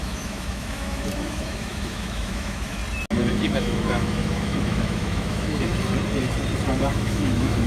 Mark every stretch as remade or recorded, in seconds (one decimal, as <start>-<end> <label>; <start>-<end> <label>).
0.0-2.8 remade; 2.8-3.3 recorded; 3.3-5.7 remade; 5.7-6.8 recorded; 6.8-7.7 remade